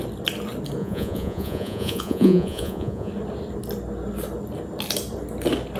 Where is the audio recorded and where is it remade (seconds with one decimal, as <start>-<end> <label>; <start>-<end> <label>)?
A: 0.0-0.8 recorded; 0.8-3.1 remade; 3.1-5.8 recorded